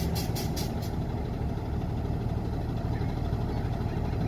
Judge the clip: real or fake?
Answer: real